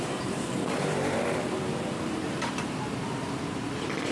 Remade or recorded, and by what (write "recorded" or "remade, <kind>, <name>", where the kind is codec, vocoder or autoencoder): remade, vocoder, BigVGAN v2